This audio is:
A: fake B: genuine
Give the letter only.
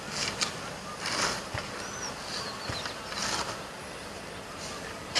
B